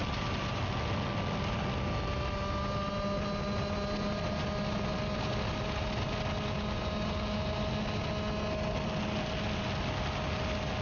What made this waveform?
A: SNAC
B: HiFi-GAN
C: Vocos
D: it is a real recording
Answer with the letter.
D